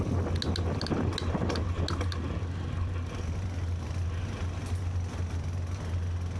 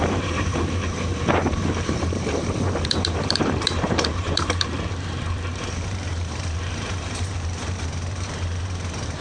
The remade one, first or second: second